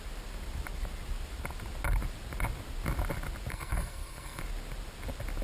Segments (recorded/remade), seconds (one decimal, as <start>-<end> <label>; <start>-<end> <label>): 0.0-3.5 recorded; 3.5-4.4 remade; 4.4-5.4 recorded